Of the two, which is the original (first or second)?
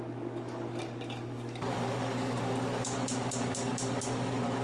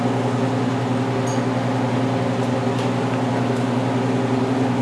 second